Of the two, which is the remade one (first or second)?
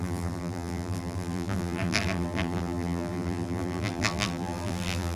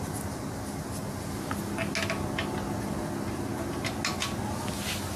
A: first